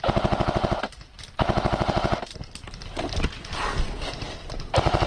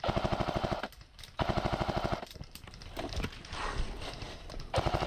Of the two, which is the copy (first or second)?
second